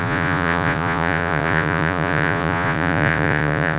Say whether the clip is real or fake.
fake